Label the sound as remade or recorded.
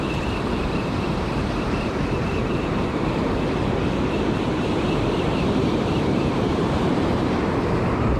remade